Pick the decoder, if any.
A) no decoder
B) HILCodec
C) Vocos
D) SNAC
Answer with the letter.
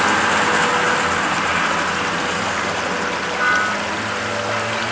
A